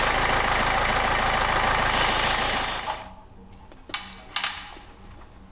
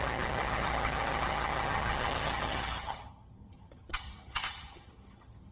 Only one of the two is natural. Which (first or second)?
first